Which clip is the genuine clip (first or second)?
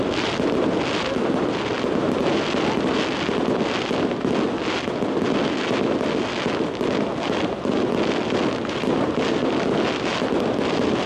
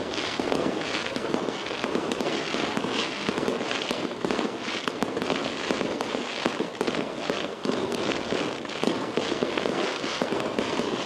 first